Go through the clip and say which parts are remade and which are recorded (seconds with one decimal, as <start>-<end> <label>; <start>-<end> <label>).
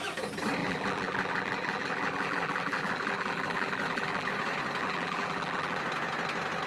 0.0-0.6 recorded; 0.6-4.3 remade; 4.3-4.8 recorded; 4.8-5.8 remade; 5.8-6.7 recorded